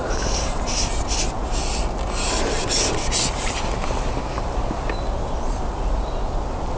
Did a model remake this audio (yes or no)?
no